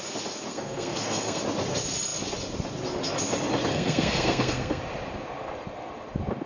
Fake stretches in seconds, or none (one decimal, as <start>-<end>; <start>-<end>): 0.5-1.4; 3.7-4.8